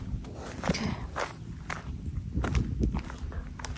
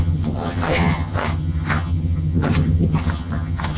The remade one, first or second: second